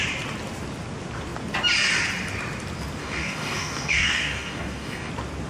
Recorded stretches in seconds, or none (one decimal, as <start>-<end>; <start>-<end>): 0.0-3.0; 5.1-5.5

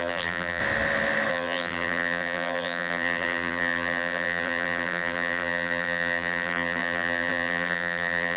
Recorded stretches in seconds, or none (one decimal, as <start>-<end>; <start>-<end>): 0.6-1.3

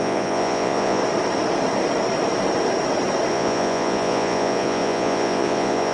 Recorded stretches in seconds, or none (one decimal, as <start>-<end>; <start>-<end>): 1.0-3.3

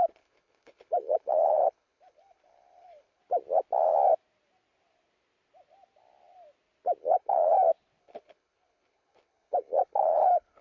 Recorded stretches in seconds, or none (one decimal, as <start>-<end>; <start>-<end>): 3.2-7.0; 7.5-8.0

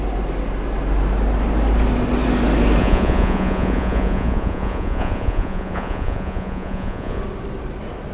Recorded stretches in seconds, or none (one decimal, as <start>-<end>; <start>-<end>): 0.0-2.8; 7.2-8.1

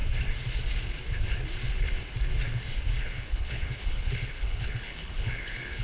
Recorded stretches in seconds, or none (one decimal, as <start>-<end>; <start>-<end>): 0.0-3.0